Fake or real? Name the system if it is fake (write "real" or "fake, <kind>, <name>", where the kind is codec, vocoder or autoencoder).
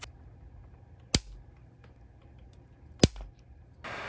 real